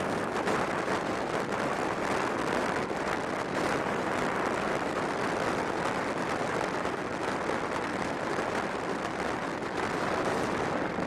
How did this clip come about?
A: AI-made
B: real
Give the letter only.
B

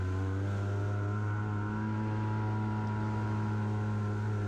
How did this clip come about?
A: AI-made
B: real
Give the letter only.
B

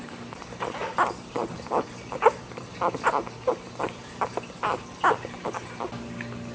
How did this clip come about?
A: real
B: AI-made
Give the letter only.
A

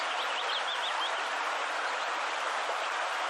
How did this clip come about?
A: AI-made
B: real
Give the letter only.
B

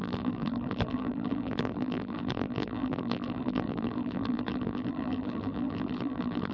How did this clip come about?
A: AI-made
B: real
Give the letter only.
A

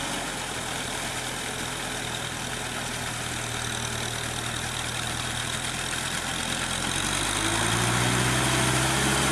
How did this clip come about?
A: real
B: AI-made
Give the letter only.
A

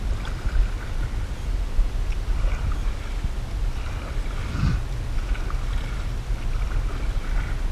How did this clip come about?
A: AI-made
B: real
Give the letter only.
B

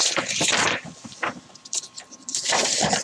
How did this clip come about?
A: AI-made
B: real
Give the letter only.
A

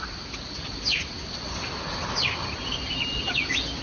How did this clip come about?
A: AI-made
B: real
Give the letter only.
B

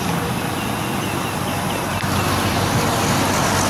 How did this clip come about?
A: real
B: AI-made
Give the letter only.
A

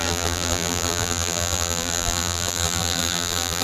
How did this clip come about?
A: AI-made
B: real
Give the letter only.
A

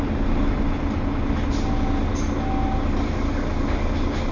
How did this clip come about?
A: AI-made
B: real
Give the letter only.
B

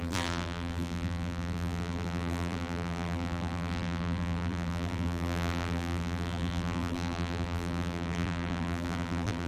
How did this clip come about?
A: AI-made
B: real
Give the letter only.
A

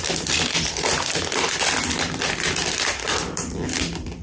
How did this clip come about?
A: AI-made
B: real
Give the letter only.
A